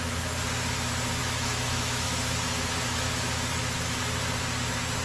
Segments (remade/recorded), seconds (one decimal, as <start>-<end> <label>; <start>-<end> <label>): 0.0-1.2 recorded; 1.2-4.0 remade; 4.0-5.0 recorded

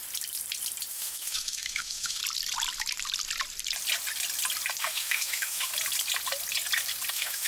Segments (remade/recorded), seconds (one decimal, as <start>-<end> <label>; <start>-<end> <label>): 0.0-0.9 recorded; 0.9-2.2 remade; 2.2-4.8 recorded; 4.8-5.7 remade; 5.7-7.1 recorded; 7.1-7.5 remade

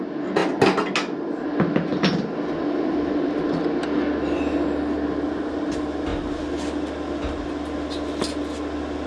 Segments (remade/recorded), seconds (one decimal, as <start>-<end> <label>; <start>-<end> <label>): 0.0-9.1 recorded

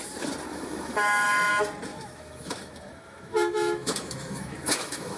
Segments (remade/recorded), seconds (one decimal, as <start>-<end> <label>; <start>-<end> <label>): 0.0-0.5 recorded; 0.5-1.5 remade; 1.5-1.9 recorded; 1.9-5.2 remade